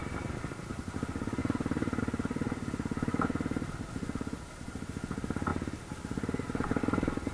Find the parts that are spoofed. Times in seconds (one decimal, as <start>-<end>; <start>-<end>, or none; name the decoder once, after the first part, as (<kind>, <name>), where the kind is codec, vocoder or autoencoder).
1.4-2.0 (vocoder, BigVGAN v2); 3.1-3.9; 5.5-6.8